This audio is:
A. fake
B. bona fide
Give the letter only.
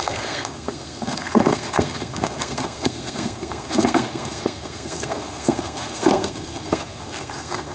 A